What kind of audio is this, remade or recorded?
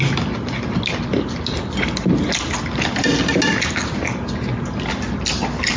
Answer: recorded